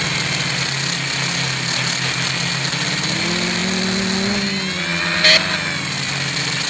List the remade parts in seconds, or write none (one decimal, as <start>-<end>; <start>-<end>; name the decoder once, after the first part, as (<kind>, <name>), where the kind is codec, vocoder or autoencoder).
none